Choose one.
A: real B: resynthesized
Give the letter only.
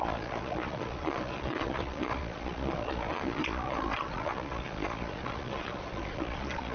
B